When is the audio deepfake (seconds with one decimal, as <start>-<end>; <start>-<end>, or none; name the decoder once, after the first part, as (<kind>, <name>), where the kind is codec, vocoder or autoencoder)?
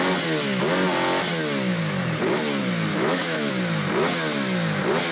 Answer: 2.9-3.5 (autoencoder, DAC-VAE)